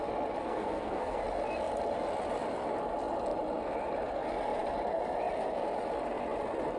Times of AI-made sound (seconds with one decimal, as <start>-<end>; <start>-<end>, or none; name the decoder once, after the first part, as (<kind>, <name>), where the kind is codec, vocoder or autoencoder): 0.4-1.2 (codec, SNAC)